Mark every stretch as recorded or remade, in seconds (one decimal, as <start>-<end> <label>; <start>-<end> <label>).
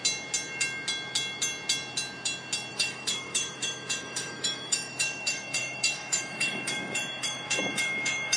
0.0-2.7 recorded; 2.7-8.4 remade